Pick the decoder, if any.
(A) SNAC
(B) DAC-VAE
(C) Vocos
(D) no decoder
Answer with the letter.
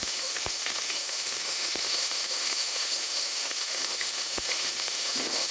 B